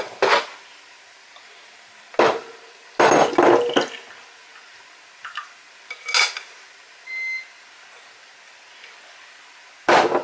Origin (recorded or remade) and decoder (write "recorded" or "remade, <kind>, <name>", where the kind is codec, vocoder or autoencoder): recorded